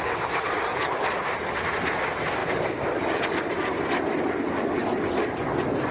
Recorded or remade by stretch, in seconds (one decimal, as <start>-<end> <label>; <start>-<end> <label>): 0.0-0.7 recorded; 0.7-1.8 remade; 1.8-2.4 recorded; 2.4-3.4 remade; 3.4-5.9 recorded